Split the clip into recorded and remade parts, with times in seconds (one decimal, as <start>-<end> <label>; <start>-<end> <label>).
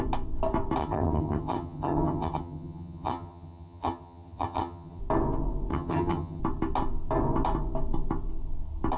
0.0-0.8 recorded; 0.8-5.0 remade; 5.0-5.7 recorded; 5.7-6.4 remade; 6.4-9.0 recorded